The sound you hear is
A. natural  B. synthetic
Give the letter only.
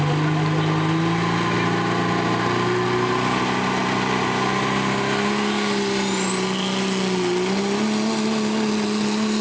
A